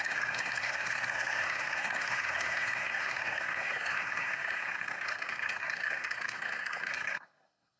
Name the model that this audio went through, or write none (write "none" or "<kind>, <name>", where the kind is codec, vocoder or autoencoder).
codec, SNAC